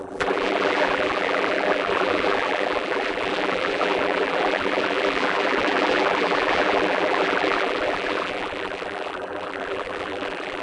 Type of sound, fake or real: fake